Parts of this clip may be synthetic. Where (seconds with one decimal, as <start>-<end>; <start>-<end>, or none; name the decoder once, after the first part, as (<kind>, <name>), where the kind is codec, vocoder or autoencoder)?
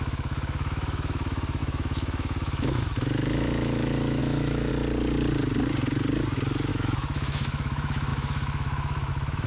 0.0-4.7 (autoencoder, DAC-VAE); 6.7-9.5